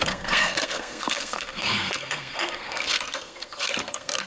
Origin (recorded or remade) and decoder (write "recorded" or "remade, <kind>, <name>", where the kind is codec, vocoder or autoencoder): remade, codec, SNAC